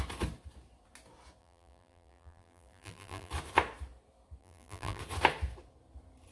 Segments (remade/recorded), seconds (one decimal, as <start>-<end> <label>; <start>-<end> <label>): 0.0-1.4 recorded; 1.4-3.3 remade; 3.3-4.4 recorded; 4.4-5.0 remade; 5.0-6.3 recorded